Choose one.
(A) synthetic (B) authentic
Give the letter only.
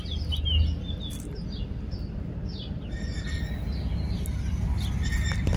B